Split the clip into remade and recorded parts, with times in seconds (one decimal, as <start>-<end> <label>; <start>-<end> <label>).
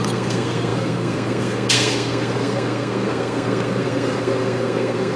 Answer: 0.0-5.2 remade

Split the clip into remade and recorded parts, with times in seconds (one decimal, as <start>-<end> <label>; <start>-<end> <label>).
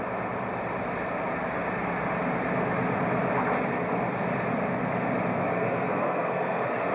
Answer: 0.0-5.4 recorded; 5.4-6.9 remade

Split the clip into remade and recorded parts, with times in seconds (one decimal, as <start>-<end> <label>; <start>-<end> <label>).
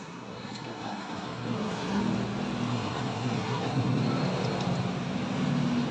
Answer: 0.0-2.0 remade; 2.0-2.7 recorded; 2.7-4.0 remade; 4.0-5.9 recorded